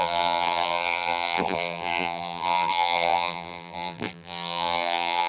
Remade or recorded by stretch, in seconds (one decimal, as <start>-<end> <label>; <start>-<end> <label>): 0.0-5.3 remade

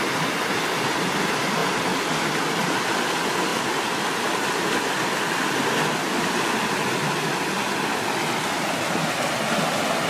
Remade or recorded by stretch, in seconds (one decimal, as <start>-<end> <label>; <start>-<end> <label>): 0.0-3.5 recorded; 3.5-6.2 remade; 6.2-10.1 recorded

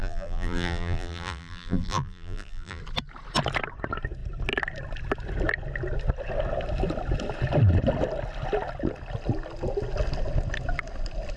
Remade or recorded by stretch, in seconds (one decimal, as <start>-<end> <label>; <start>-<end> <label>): 0.0-2.8 remade; 2.8-11.4 recorded

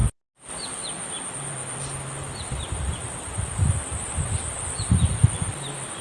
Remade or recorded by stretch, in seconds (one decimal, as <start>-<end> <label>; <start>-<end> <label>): 0.0-6.0 recorded

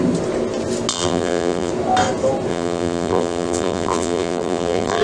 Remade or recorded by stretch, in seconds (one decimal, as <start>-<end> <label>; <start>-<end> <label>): 0.0-0.9 recorded; 0.9-1.7 remade; 1.7-2.5 recorded; 2.5-5.0 remade